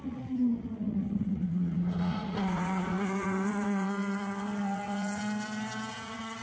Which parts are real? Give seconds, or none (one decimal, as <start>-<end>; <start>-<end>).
5.2-5.9